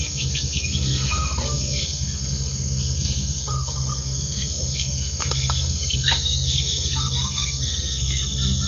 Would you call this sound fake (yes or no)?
yes